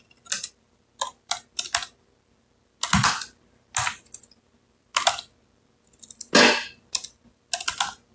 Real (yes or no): yes